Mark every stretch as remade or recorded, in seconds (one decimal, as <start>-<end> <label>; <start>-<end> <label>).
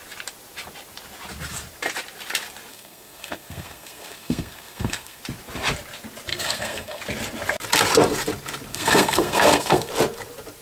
0.0-2.7 recorded; 2.7-5.2 remade; 5.2-6.3 recorded; 6.3-7.0 remade; 7.0-8.7 recorded; 8.7-9.9 remade; 9.9-10.6 recorded